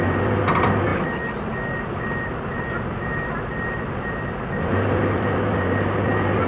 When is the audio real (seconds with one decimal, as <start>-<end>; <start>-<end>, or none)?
0.0-6.5